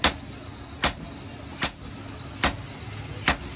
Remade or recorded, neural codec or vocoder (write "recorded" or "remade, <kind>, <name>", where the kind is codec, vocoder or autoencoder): recorded